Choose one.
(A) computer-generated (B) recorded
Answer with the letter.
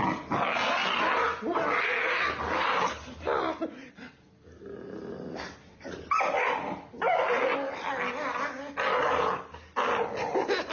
B